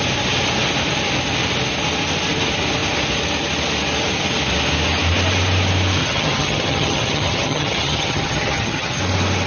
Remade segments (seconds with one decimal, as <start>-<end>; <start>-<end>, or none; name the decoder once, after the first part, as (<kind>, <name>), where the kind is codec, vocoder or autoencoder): 6.0-9.0 (vocoder, HiFi-GAN)